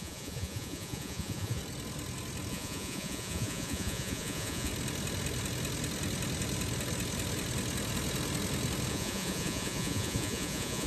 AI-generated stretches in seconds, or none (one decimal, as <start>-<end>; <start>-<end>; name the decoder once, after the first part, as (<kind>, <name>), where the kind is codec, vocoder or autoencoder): 0.0-1.6 (vocoder, Vocos); 2.5-4.7; 8.9-10.9